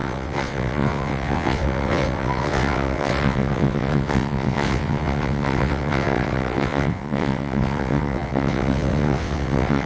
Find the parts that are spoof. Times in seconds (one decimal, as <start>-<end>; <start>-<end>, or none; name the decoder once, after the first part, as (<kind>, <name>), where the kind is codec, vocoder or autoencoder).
0.0-9.9 (vocoder, WaveNeXt)